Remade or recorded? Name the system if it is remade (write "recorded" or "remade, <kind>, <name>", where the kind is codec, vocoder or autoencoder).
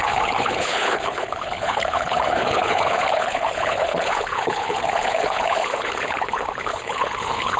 remade, codec, HILCodec